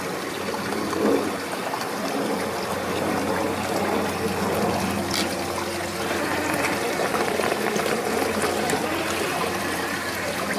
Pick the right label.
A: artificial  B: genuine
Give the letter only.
B